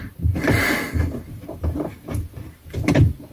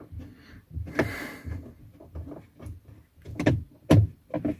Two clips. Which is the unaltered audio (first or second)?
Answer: second